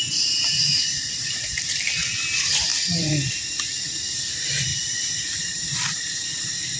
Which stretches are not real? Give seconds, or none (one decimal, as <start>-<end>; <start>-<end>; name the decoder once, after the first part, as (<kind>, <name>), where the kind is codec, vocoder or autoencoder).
0.0-6.8 (vocoder, BigVGAN v2)